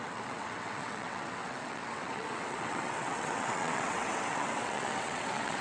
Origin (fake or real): fake